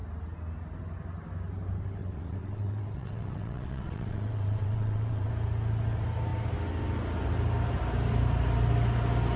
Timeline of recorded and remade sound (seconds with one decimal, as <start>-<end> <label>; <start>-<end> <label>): 0.0-2.0 recorded; 2.0-5.3 remade; 5.3-9.4 recorded